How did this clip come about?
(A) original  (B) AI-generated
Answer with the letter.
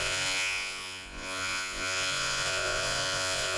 B